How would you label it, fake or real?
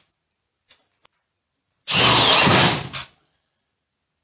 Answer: real